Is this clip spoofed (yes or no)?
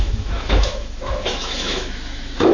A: yes